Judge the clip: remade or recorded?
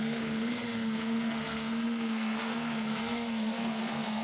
remade